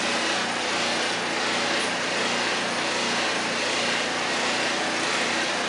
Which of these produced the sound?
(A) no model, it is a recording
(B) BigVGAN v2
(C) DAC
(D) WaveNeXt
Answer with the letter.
A